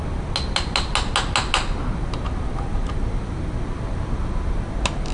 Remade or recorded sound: recorded